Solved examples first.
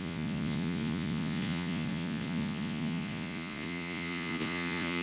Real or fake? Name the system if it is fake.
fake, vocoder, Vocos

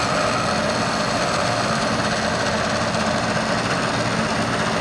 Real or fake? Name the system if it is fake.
real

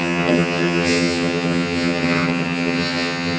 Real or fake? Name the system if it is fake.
fake, vocoder, HiFi-GAN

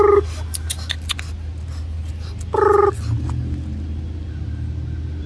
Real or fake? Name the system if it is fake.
real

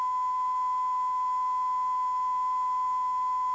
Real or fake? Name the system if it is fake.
real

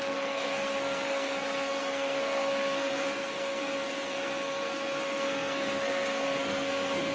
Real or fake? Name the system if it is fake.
fake, codec, SNAC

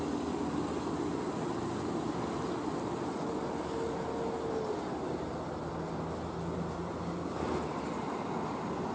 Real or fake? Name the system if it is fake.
real